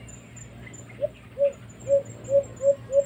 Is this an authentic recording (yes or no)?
yes